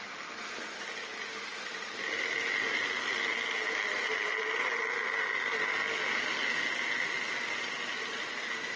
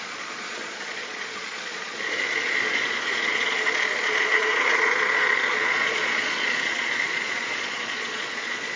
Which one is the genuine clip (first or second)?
first